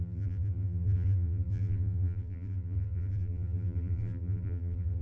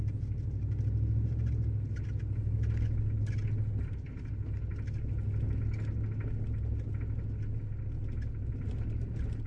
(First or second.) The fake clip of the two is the first